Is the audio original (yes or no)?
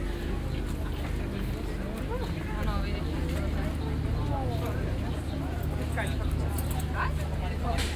yes